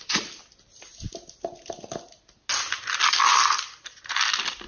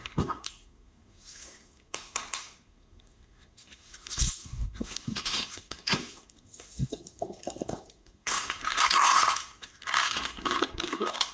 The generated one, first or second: second